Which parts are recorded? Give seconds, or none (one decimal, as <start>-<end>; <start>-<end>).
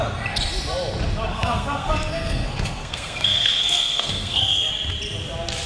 0.0-1.3; 4.7-5.7